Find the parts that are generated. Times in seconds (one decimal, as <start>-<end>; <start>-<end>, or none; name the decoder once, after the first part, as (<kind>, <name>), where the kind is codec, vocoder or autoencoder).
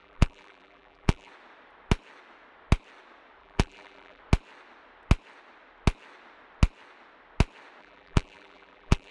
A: 0.0-1.3 (vocoder, BigVGAN v2); 3.4-4.2; 7.8-9.1